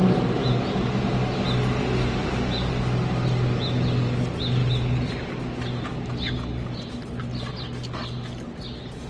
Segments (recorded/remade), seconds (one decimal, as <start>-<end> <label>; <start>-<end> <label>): 0.0-9.1 recorded